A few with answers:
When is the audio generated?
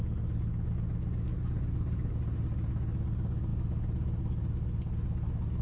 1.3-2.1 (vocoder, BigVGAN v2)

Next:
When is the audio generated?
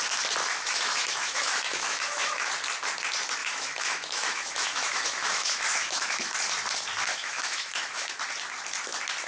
0.4-2.5 (autoencoder, DAC-VAE); 3.4-6.3; 7.1-8.1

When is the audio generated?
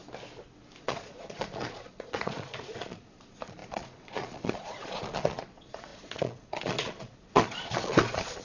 0.8-8.4 (vocoder, Vocos)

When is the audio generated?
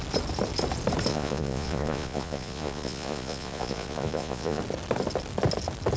1.1-4.6 (vocoder, Vocos)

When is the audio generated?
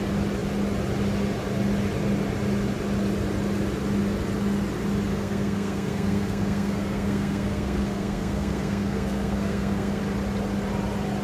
5.1-10.0 (codec, SNAC)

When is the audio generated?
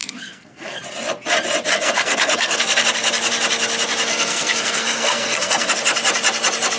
0.0-0.8 (codec, SNAC); 1.7-2.8; 4.1-5.7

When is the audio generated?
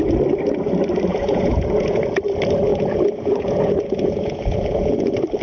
1.1-2.0 (vocoder, Vocos); 2.7-5.0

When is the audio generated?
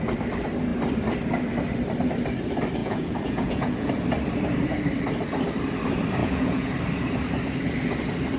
2.8-3.9 (vocoder, Vocos); 6.2-6.7